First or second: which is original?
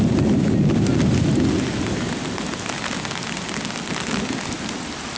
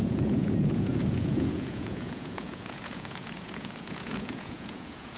first